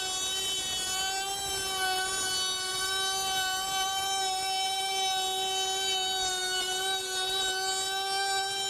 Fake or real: real